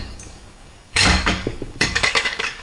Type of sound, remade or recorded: remade